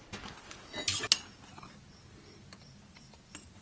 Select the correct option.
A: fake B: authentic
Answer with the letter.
B